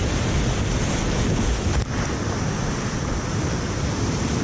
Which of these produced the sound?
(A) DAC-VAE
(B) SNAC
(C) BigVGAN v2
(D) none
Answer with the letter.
D